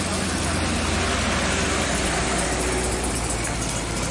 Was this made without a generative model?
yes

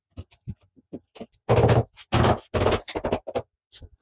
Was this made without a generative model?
yes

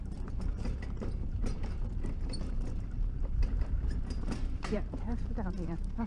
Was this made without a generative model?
no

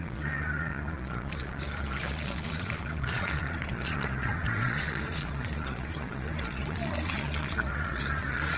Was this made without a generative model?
no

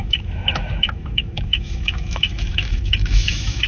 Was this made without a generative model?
no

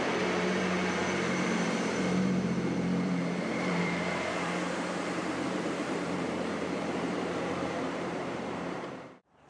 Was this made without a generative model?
no